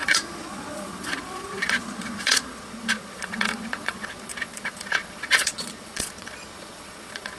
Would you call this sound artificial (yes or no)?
yes